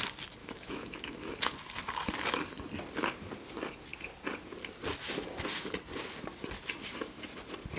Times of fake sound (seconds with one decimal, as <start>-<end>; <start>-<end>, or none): 0.4-1.4

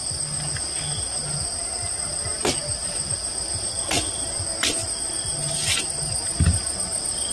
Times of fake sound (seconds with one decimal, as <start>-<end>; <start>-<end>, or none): none

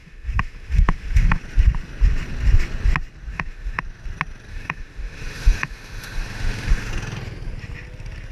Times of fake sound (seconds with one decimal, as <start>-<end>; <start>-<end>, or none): 0.0-1.4; 3.3-3.8; 4.5-6.9

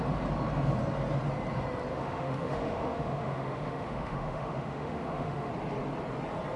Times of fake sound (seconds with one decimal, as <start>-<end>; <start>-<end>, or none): 1.9-5.5

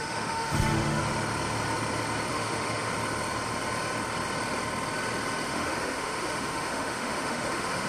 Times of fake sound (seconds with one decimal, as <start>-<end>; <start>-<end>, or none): 0.0-1.0; 2.3-2.9; 5.5-7.9